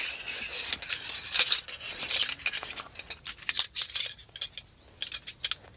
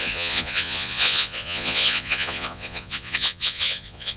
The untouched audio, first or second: first